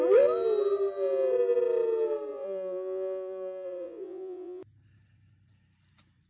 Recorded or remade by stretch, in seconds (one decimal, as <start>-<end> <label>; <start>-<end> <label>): 0.0-2.3 recorded; 2.3-4.6 remade; 4.6-6.3 recorded